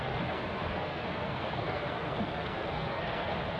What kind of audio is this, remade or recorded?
remade